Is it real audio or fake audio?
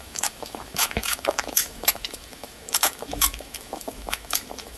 fake